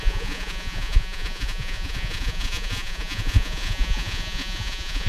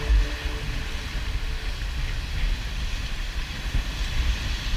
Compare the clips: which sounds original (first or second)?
second